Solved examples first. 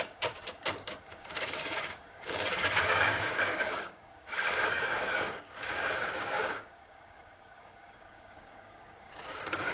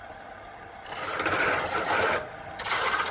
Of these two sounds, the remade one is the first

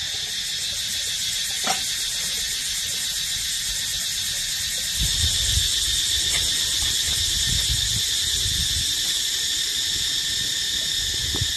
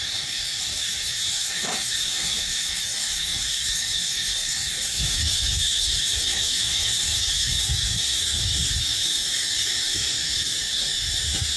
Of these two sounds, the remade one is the second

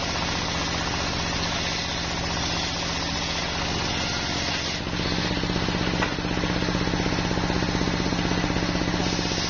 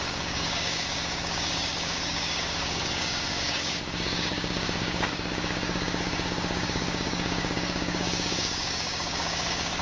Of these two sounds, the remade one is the second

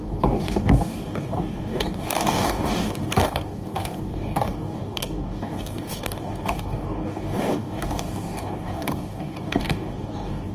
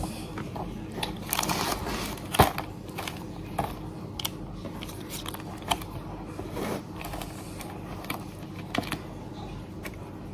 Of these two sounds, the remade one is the first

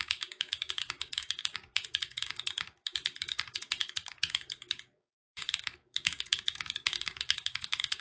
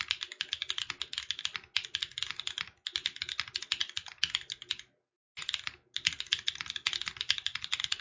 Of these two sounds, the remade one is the first